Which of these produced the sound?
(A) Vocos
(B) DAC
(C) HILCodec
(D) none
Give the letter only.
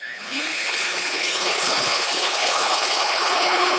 C